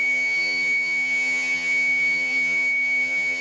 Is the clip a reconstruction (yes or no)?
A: yes